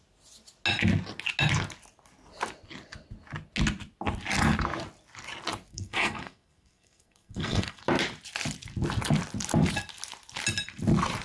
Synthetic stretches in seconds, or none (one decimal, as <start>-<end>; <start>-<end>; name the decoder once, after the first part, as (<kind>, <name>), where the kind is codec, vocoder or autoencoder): 5.7-7.8 (codec, SNAC)